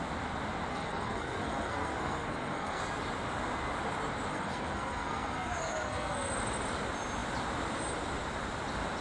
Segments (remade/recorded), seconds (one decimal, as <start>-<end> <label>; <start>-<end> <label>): 0.0-0.7 recorded; 0.7-2.8 remade; 2.8-4.3 recorded; 4.3-6.3 remade; 6.3-9.0 recorded